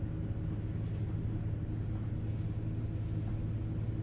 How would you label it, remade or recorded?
recorded